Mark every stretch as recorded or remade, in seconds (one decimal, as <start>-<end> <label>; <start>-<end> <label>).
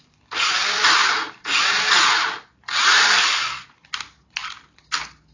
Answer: 0.0-1.0 recorded; 1.0-1.9 remade; 1.9-2.5 recorded; 2.5-4.8 remade; 4.8-5.3 recorded